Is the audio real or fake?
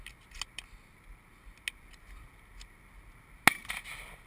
real